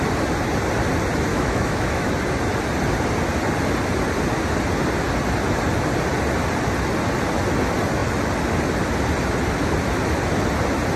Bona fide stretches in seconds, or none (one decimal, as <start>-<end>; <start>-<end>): 0.0-1.3; 2.1-11.0